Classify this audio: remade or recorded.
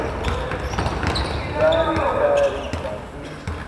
recorded